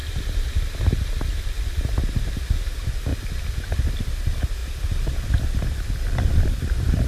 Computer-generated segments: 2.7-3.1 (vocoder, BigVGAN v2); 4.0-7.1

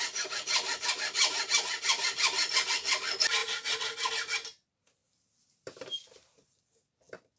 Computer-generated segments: none

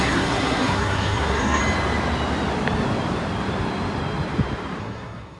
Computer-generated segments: 0.0-1.6 (codec, SNAC); 4.8-5.4